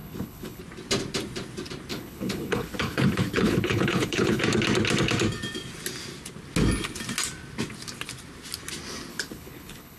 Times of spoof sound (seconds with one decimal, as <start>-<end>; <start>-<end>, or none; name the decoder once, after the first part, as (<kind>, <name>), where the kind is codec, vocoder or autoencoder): 0.0-0.6 (codec, HILCodec); 1.9-4.4; 9.1-10.0